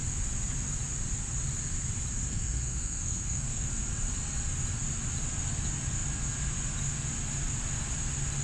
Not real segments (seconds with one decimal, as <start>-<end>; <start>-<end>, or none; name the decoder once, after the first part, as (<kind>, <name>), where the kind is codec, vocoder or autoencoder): 2.3-3.7 (codec, SNAC)